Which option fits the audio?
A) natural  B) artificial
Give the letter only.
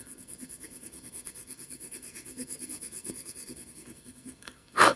B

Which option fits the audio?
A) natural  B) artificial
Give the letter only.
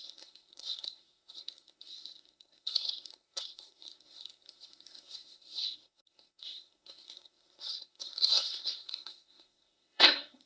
B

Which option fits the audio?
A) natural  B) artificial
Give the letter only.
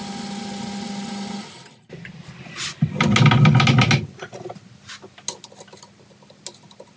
A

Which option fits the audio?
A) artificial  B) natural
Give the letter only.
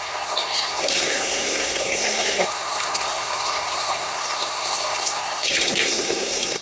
A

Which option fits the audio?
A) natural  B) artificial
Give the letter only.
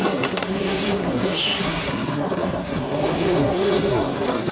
B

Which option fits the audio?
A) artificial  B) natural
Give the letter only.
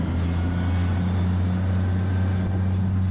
B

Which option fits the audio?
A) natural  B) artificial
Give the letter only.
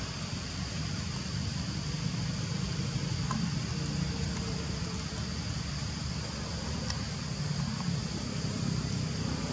A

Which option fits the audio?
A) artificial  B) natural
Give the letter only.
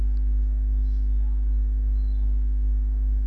B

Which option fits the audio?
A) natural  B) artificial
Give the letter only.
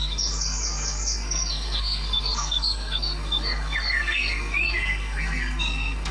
B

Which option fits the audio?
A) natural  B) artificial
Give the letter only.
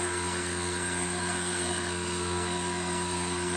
B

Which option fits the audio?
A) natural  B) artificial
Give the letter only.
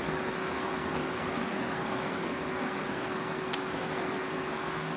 B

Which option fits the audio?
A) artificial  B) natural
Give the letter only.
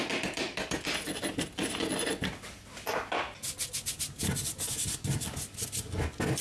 B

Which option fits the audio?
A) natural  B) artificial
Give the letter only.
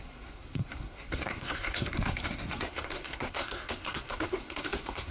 B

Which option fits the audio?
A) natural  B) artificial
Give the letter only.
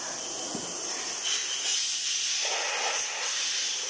A